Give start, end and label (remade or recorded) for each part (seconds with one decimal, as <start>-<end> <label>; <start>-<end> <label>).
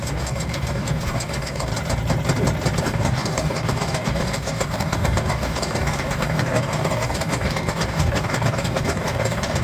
0.0-1.7 remade; 1.7-2.8 recorded; 2.8-9.6 remade